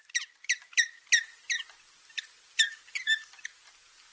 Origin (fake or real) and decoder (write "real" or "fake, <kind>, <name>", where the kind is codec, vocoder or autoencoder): real